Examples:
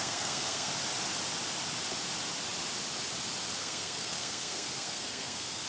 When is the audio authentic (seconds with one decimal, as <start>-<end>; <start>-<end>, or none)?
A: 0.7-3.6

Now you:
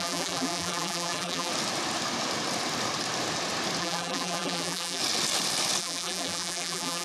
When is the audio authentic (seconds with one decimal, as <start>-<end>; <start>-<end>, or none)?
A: 1.5-3.8; 5.0-5.8

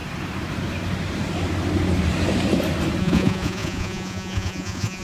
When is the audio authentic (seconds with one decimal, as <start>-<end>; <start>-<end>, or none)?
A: 0.0-3.0

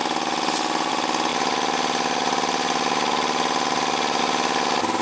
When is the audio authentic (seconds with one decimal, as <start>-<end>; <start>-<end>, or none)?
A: 0.9-5.0